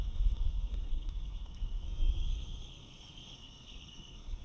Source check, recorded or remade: remade